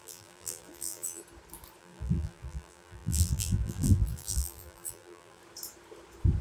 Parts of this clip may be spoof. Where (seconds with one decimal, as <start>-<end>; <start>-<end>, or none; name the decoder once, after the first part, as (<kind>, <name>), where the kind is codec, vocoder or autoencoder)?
0.0-1.2 (vocoder, BigVGAN v2); 1.8-5.4